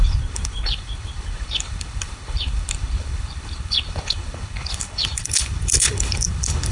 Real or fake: fake